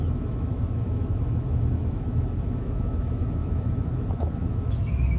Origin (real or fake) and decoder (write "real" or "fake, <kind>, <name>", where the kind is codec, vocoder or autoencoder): fake, autoencoder, DAC-VAE